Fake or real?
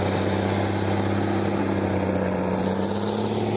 real